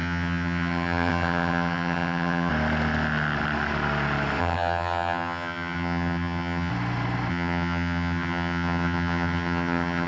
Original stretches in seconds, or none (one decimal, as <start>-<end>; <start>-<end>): 2.5-4.4; 6.7-7.3